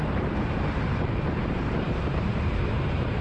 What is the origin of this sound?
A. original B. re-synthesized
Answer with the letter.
B